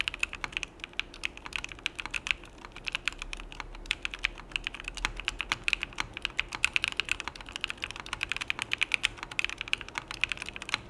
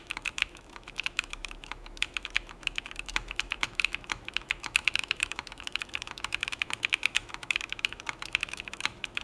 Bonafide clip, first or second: first